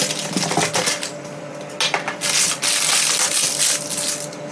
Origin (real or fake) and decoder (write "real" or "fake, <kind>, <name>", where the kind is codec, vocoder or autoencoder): real